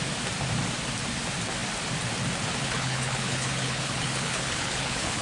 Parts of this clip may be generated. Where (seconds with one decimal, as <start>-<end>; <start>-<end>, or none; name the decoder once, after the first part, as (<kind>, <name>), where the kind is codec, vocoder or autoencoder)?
2.6-5.2 (codec, HILCodec)

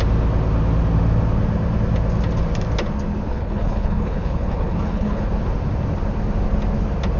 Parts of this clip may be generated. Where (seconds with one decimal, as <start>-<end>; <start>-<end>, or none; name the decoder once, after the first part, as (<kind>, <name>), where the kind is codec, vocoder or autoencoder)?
3.3-5.3 (codec, HILCodec)

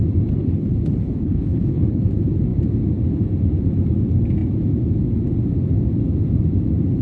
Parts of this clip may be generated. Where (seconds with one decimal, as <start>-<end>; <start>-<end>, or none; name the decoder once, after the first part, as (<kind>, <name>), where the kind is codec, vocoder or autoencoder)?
0.4-2.1 (codec, HILCodec)

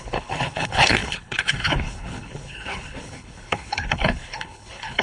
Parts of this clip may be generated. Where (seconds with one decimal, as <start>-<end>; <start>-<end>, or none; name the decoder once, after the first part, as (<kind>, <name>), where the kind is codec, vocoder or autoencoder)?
0.0-5.0 (codec, HILCodec)

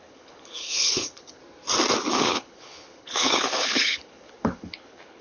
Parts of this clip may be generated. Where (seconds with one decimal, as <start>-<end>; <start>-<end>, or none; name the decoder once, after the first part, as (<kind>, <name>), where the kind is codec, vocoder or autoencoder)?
0.0-1.4 (codec, HILCodec); 2.1-5.2

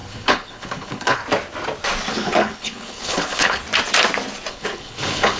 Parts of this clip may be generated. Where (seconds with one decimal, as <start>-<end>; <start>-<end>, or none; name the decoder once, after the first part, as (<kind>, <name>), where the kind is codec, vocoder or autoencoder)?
0.0-1.2 (codec, HILCodec); 2.1-3.6; 4.5-5.4